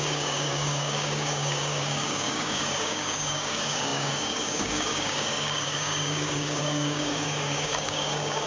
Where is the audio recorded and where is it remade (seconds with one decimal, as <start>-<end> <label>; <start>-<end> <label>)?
0.0-8.5 remade